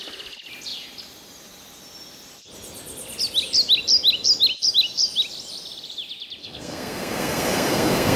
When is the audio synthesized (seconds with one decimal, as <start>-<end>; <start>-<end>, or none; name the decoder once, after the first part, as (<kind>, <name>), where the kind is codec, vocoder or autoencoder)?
6.4-8.2 (codec, SNAC)